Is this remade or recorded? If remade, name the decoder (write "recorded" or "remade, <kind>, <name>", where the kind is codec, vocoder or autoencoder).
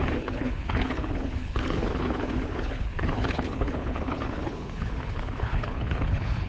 remade, codec, HILCodec